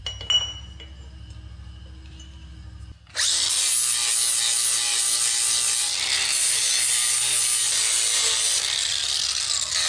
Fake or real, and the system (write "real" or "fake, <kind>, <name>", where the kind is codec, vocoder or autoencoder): real